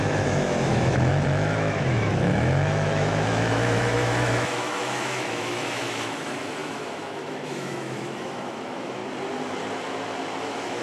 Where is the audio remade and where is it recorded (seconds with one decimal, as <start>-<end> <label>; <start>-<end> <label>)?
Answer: 0.0-9.0 remade; 9.0-10.4 recorded; 10.4-10.8 remade